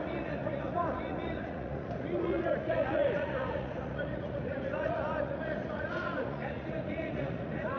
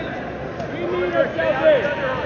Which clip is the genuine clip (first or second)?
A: second